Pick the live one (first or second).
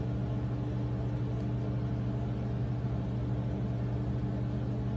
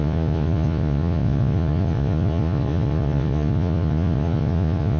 first